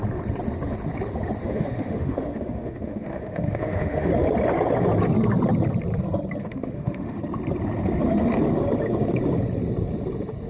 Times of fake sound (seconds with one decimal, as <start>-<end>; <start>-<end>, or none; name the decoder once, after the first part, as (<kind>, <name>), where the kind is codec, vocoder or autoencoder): 1.4-4.1 (autoencoder, DAC-VAE); 6.4-7.2